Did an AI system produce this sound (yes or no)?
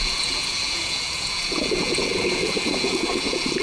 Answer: yes